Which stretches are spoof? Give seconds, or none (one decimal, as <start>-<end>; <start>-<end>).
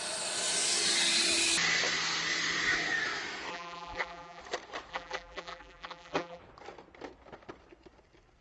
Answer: 3.5-4.4; 4.9-6.4